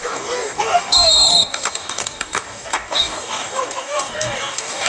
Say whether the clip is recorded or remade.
remade